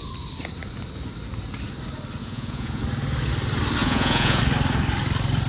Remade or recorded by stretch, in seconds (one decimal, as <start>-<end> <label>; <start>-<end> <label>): 0.0-2.2 recorded; 2.2-2.8 remade; 2.8-3.8 recorded; 3.8-4.4 remade; 4.4-5.5 recorded